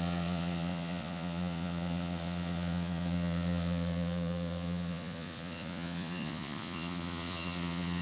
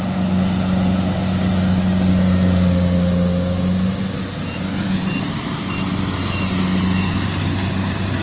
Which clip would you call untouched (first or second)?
second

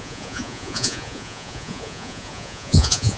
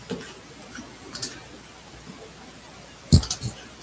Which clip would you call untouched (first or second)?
second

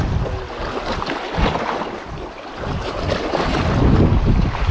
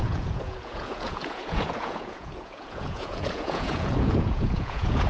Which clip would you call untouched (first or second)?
first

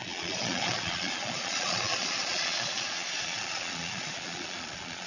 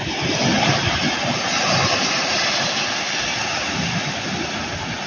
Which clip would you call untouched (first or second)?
second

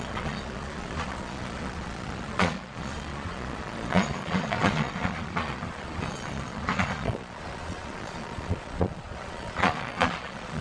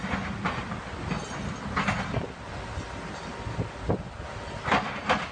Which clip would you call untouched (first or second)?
second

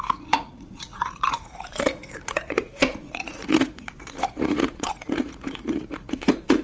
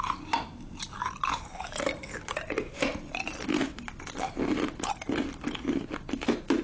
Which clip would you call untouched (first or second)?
second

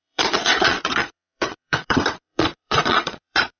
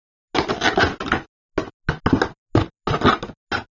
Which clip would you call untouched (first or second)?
second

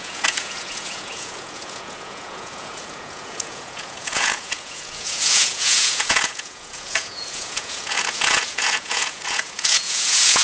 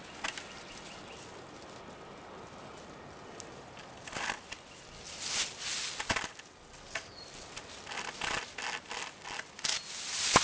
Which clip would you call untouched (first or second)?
second